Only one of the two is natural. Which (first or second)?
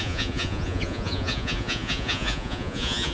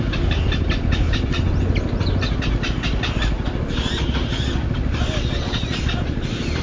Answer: second